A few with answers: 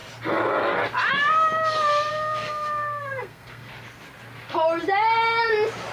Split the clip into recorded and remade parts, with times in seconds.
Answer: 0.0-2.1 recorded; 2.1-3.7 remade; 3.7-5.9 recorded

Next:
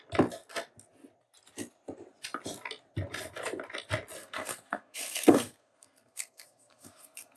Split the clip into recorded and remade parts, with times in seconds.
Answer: 0.0-4.2 recorded; 4.2-7.4 remade

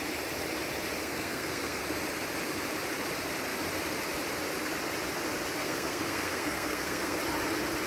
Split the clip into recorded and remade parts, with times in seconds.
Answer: 0.0-1.0 recorded; 1.0-1.8 remade; 1.8-5.6 recorded; 5.6-7.2 remade; 7.2-7.9 recorded

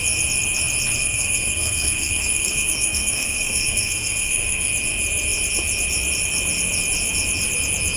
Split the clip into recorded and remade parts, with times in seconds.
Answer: 0.0-1.0 recorded; 1.0-4.7 remade; 4.7-8.0 recorded

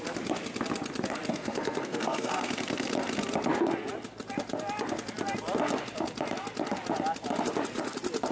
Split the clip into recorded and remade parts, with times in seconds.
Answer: 0.0-1.3 recorded; 1.3-2.5 remade; 2.5-8.3 recorded